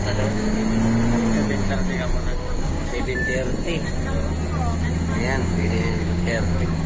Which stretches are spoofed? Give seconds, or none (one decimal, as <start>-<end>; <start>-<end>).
0.0-0.6; 2.4-3.1; 5.4-6.9